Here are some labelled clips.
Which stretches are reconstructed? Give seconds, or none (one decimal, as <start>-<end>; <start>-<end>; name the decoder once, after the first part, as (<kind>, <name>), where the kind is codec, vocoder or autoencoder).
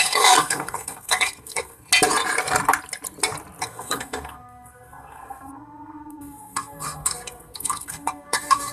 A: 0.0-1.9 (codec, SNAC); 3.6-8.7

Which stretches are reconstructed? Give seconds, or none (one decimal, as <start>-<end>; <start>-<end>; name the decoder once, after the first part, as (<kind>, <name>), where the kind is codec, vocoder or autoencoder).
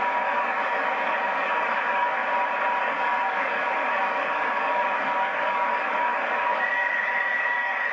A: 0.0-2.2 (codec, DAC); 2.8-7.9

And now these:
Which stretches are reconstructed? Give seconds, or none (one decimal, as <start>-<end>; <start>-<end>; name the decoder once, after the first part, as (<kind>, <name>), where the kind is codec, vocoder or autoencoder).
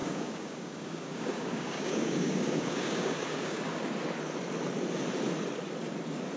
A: 0.0-3.8 (codec, DAC)